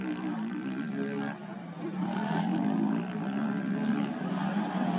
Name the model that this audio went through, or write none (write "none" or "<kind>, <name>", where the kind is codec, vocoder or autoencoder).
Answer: none